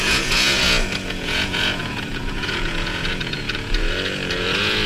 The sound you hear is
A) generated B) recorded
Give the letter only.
A